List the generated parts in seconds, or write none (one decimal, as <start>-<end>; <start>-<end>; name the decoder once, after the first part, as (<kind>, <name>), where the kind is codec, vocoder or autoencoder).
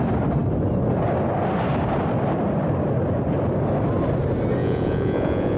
4.6-5.6 (vocoder, Vocos)